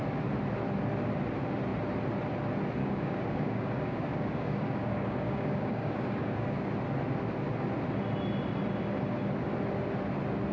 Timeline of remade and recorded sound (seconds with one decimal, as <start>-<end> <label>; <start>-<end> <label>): 0.0-2.8 recorded; 2.8-6.7 remade; 6.7-10.5 recorded